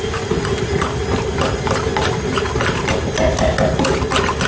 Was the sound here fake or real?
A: real